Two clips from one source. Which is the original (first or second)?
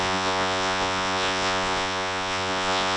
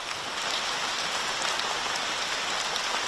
second